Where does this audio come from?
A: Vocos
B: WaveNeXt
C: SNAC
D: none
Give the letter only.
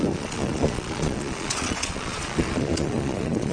A